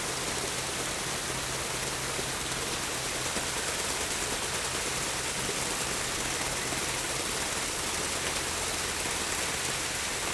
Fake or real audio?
real